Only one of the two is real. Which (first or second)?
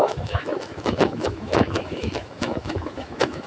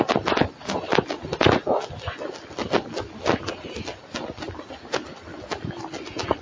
second